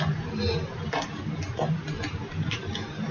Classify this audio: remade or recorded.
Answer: recorded